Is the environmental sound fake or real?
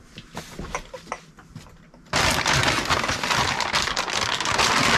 real